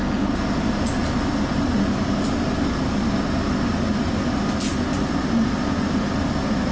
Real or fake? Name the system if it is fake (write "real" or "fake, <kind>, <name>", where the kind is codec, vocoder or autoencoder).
real